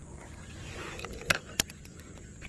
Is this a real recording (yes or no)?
no